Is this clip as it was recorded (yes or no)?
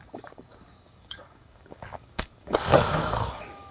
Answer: no